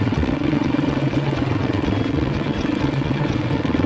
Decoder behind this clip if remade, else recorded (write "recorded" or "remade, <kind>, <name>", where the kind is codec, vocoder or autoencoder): remade, vocoder, WaveNeXt